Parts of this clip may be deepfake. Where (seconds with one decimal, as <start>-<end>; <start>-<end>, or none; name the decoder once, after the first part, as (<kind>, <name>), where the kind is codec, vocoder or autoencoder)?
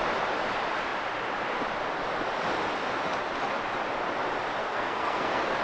4.6-5.6 (codec, SNAC)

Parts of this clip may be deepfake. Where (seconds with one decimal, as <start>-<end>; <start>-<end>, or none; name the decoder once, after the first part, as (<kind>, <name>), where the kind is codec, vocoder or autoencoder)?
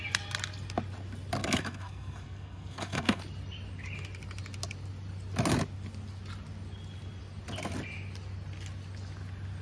1.4-3.2 (codec, SNAC)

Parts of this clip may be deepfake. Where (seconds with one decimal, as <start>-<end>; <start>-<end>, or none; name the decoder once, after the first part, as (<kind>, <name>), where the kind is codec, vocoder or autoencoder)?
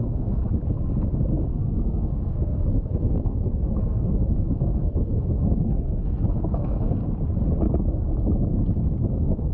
0.0-0.4 (codec, SNAC); 1.5-7.0; 9.1-9.5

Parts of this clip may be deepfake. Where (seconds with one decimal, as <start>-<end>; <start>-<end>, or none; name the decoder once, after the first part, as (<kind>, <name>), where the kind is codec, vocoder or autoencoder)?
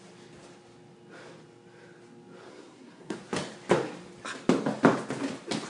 2.5-3.2 (codec, SNAC)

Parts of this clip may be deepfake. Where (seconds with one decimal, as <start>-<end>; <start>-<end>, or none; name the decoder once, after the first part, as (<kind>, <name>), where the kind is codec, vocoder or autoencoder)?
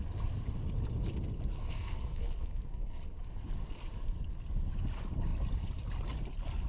1.6-3.0 (codec, SNAC)